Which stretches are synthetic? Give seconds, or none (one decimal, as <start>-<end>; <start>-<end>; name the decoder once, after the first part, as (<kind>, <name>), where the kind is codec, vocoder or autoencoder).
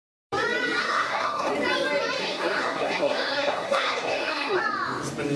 0.8-1.5 (codec, SNAC); 2.2-4.6